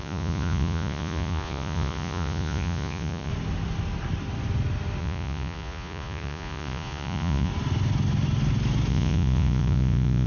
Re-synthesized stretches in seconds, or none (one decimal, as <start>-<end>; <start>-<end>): 0.0-3.3; 5.0-7.5; 8.9-10.3